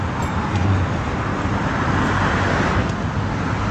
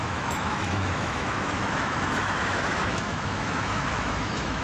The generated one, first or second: second